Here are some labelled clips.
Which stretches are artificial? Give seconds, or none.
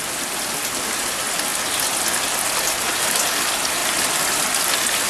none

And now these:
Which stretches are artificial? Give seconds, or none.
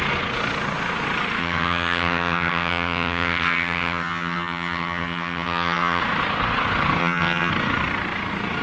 1.4-6.0; 7.0-7.5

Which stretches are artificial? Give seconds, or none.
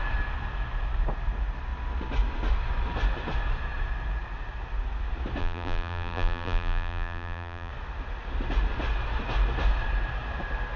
5.4-7.7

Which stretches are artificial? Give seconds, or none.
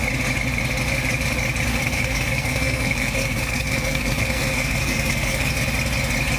1.7-5.5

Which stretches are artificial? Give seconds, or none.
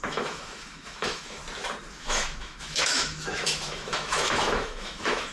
0.0-1.4; 1.9-5.3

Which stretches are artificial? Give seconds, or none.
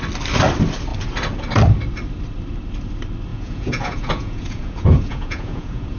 3.3-6.0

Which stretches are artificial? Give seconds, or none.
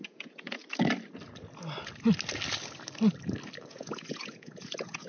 0.0-0.6; 3.7-5.1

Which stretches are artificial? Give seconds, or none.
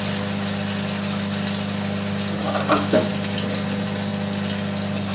2.4-3.1